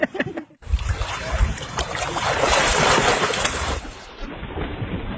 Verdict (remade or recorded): remade